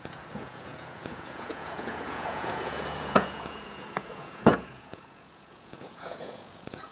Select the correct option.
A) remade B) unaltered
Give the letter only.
A